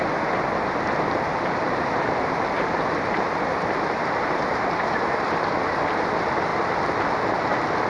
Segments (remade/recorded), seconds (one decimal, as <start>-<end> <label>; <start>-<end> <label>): 0.0-1.3 recorded; 1.3-6.0 remade; 6.0-7.9 recorded